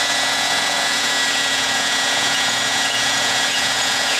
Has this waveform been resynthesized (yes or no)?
yes